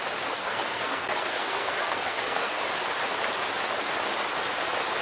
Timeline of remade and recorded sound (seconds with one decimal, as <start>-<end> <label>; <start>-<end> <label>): 0.0-0.4 recorded; 0.4-2.6 remade; 2.6-5.0 recorded